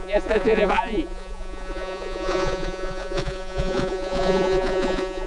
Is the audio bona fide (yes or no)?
no